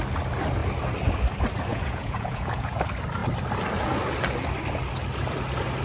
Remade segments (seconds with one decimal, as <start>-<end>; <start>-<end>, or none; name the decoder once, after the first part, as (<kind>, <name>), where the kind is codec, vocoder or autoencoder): 1.7-2.8 (vocoder, Vocos)